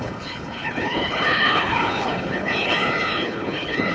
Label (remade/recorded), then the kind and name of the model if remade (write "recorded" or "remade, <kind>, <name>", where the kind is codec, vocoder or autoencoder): remade, codec, HILCodec